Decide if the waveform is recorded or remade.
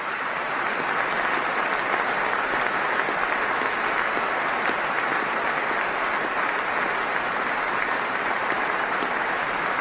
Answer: recorded